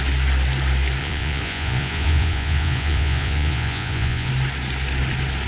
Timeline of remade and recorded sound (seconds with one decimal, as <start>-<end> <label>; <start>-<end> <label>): 0.0-1.0 recorded; 1.0-4.3 remade; 4.3-5.5 recorded